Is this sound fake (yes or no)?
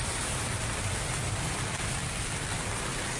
no